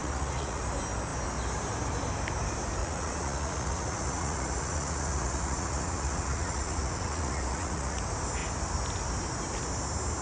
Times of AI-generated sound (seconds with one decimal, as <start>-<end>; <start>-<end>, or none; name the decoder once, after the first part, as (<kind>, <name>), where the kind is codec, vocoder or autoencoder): 0.0-0.6 (vocoder, Vocos); 2.8-8.0